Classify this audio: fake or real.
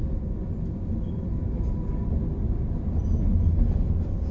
real